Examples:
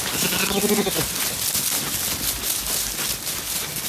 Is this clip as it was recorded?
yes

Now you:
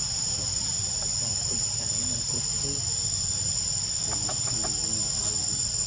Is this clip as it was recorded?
yes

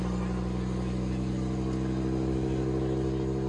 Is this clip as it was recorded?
yes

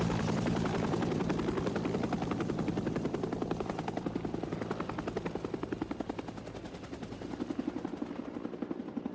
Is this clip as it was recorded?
no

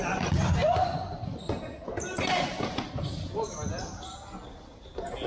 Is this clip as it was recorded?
yes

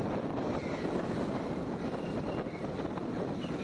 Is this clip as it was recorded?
yes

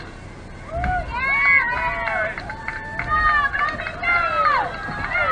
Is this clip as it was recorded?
yes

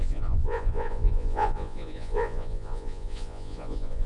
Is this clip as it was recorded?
no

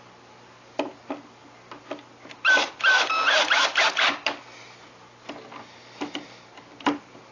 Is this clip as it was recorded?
yes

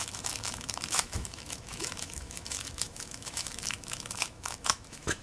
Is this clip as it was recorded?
no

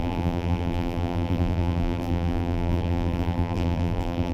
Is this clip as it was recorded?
no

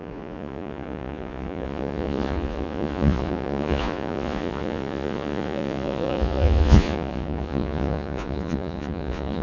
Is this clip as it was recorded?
no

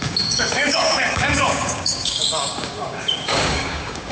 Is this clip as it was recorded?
no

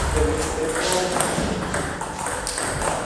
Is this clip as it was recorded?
yes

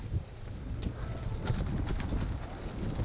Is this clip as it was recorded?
yes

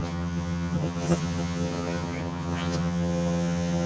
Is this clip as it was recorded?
no